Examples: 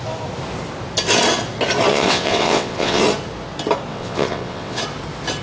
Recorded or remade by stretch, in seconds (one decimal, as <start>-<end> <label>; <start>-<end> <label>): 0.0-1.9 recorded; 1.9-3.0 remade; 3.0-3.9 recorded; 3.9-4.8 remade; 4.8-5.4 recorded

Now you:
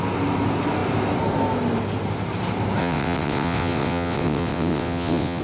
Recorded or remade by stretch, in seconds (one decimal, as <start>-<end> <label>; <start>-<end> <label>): 0.0-2.8 recorded; 2.8-5.4 remade

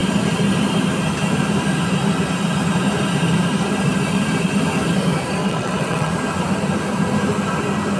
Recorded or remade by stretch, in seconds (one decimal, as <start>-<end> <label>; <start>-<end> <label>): 0.0-5.4 recorded; 5.4-6.1 remade; 6.1-8.0 recorded

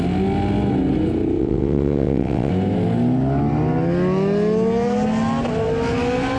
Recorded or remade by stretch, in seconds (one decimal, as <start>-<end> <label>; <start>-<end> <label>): 0.0-1.4 recorded; 1.4-2.5 remade; 2.5-6.4 recorded